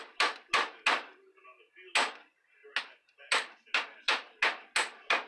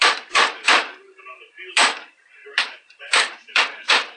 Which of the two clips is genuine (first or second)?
first